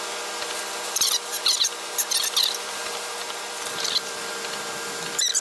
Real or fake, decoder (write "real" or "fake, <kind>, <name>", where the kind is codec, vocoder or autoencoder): real